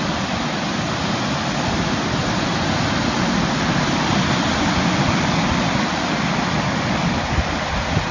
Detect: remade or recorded recorded